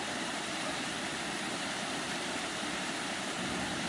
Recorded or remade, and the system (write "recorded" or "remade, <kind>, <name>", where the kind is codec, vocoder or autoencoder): remade, vocoder, BigVGAN v2